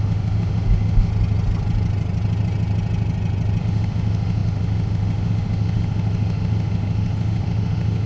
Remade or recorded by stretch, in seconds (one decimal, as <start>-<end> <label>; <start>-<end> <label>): 0.0-1.1 remade; 1.1-3.6 recorded; 3.6-8.1 remade